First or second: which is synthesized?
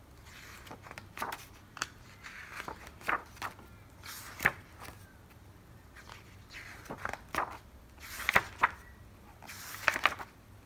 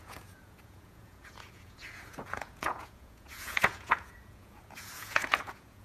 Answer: second